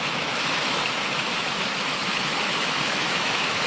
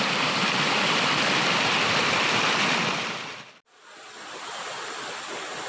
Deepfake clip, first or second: first